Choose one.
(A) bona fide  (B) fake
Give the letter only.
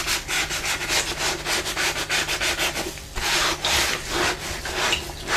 A